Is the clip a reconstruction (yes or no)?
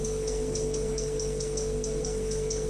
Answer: yes